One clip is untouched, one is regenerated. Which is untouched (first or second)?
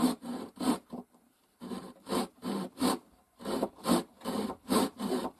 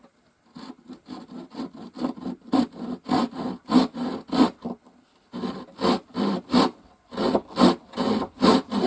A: second